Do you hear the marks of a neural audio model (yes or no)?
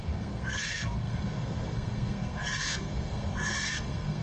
yes